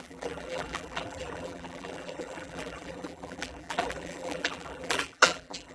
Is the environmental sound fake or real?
fake